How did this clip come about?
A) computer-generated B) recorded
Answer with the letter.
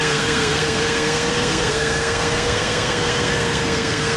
A